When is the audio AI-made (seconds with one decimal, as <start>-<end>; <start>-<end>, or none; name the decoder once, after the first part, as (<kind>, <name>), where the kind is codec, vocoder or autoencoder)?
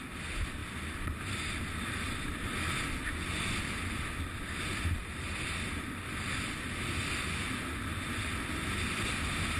5.0-6.5 (vocoder, BigVGAN v2)